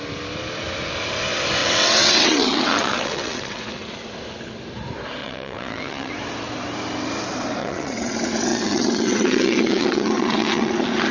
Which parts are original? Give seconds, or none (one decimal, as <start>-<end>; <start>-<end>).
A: 0.0-1.6; 3.6-5.2; 6.1-7.6; 8.1-8.5; 10.7-11.1